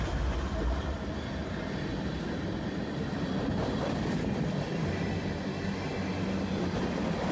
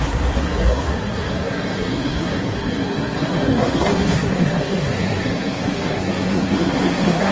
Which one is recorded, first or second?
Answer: first